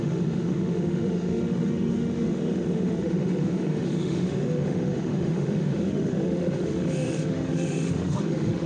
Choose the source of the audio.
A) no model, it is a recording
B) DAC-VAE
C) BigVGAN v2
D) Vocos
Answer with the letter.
B